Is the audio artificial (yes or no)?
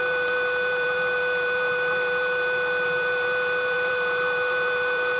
yes